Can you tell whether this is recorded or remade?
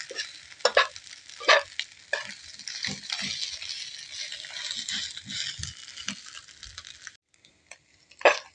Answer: recorded